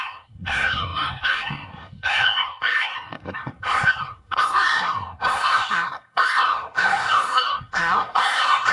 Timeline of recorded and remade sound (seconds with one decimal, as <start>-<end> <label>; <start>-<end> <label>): 0.0-8.7 remade